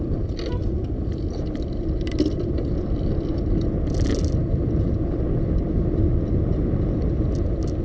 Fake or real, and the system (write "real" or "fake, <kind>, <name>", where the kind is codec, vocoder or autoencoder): real